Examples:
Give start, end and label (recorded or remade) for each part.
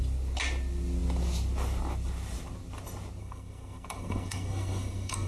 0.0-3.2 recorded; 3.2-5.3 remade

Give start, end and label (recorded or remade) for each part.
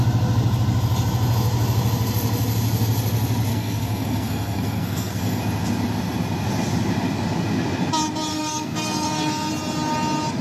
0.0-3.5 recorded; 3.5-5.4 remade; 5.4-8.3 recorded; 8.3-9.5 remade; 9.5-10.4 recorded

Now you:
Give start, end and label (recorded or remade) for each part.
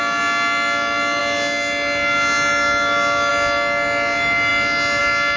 0.0-5.4 recorded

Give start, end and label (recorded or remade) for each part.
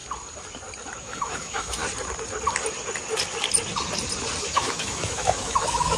0.0-1.0 recorded; 1.0-1.8 remade; 1.8-4.4 recorded; 4.4-6.0 remade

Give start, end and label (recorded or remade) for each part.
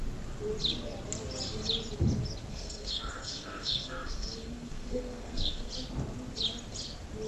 0.0-2.5 recorded; 2.5-5.7 remade; 5.7-7.3 recorded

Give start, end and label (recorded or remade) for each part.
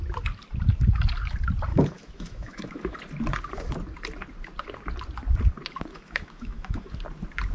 0.0-1.7 recorded; 1.7-3.0 remade; 3.0-5.9 recorded; 5.9-6.9 remade; 6.9-7.5 recorded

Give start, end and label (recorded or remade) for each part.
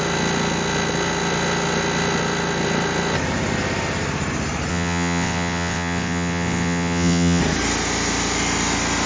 0.0-4.7 recorded; 4.7-7.4 remade; 7.4-9.1 recorded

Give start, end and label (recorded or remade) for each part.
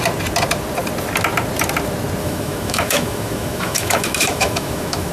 0.0-2.2 recorded; 2.2-5.1 remade